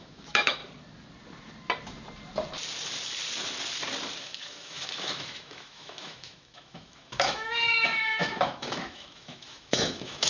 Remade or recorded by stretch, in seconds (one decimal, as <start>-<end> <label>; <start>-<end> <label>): 0.0-0.6 remade; 0.6-4.2 recorded; 4.2-10.3 remade

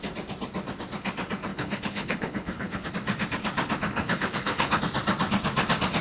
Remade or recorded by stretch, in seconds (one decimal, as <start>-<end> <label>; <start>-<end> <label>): 0.0-1.5 recorded; 1.5-2.9 remade; 2.9-3.9 recorded; 3.9-4.8 remade; 4.8-6.0 recorded

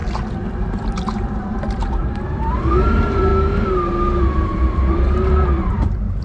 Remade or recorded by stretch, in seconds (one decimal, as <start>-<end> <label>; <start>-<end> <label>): 0.0-0.7 recorded; 0.7-3.3 remade; 3.3-4.2 recorded; 4.2-6.2 remade

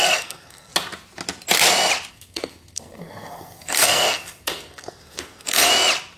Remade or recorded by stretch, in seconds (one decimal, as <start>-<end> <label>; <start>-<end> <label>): 0.0-0.7 remade; 0.7-2.1 recorded; 2.1-5.7 remade; 5.7-6.2 recorded

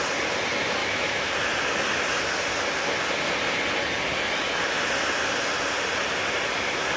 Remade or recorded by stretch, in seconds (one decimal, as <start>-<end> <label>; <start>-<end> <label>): 0.0-0.8 recorded; 0.8-1.3 remade; 1.3-7.0 recorded

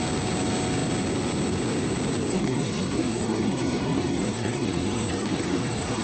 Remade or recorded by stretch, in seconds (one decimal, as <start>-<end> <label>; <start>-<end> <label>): 0.0-2.3 recorded; 2.3-6.0 remade

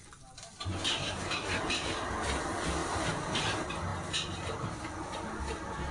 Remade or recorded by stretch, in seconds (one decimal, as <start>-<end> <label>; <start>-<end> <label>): 0.0-0.9 recorded; 0.9-1.6 remade; 1.6-5.9 recorded